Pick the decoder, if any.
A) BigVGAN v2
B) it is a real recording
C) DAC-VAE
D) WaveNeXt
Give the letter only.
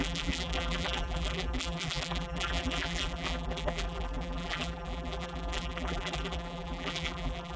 A